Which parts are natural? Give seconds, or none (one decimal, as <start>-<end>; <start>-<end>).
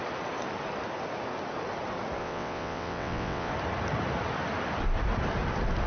0.0-2.2; 3.5-5.9